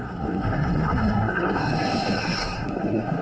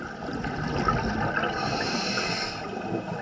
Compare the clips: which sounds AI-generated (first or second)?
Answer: first